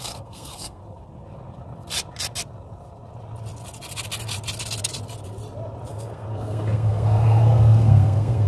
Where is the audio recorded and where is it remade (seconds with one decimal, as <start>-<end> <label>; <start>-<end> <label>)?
0.0-0.8 remade; 0.8-5.9 recorded; 5.9-8.5 remade